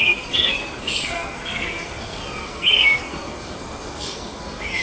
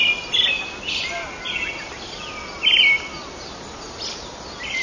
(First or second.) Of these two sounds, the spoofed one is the first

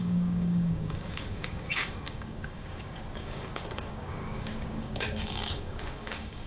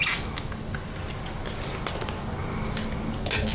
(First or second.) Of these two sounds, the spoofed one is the first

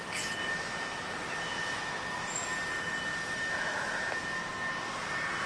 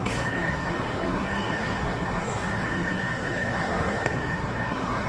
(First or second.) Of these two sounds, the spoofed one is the second